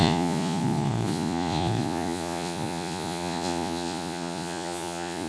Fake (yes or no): yes